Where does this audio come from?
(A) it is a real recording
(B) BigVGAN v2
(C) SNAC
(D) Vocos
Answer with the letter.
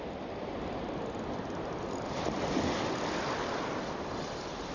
A